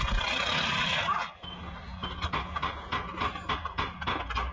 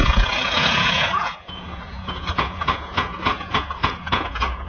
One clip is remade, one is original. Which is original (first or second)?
first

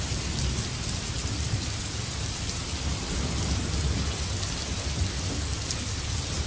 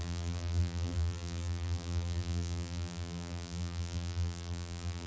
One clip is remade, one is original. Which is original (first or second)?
first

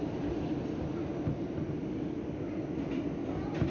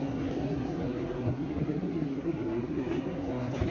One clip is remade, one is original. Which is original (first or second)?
first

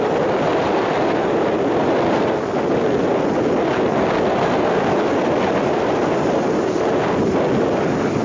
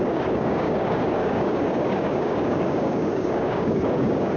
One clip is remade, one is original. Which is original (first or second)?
first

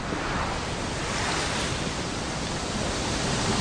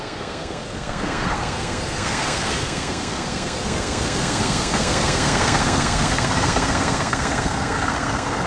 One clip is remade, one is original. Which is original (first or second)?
first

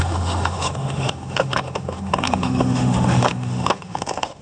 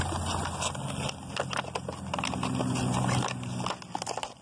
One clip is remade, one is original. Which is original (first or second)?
second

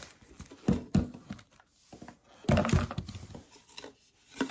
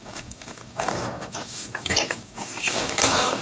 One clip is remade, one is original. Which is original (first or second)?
first